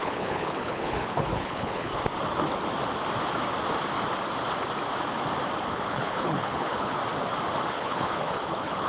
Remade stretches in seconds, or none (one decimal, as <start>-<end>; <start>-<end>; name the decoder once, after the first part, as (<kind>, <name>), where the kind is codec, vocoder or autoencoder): 0.0-1.9 (codec, HILCodec); 5.7-7.0; 7.7-8.9